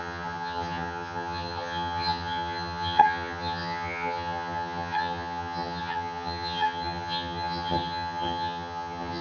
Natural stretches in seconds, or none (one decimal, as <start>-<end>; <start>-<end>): none